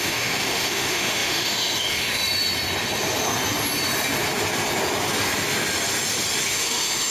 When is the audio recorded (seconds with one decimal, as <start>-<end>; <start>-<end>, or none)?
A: 2.2-6.5